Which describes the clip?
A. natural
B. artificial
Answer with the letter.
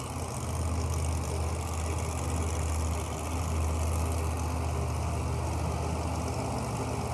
A